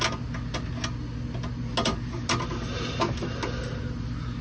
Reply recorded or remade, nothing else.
recorded